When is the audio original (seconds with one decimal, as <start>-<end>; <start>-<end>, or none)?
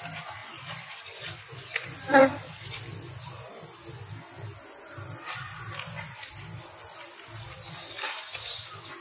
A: 0.0-9.0